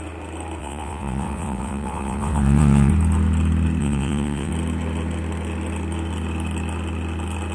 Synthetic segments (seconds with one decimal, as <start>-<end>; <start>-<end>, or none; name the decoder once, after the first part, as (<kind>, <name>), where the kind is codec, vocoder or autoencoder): 0.6-2.9 (vocoder, WaveNeXt); 3.8-4.5